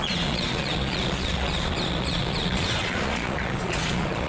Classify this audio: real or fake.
fake